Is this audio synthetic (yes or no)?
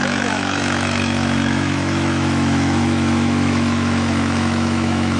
yes